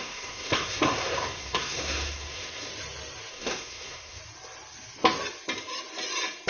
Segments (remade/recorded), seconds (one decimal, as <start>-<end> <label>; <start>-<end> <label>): 0.0-2.7 remade; 2.7-3.3 recorded; 3.3-4.2 remade; 4.2-6.5 recorded